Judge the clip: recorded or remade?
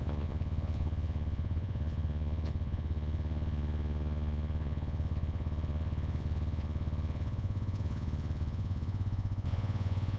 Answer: remade